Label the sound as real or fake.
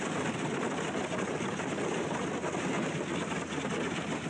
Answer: real